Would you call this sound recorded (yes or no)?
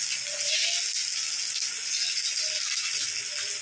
yes